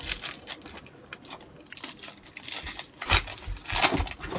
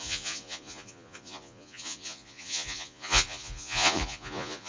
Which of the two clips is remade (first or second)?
second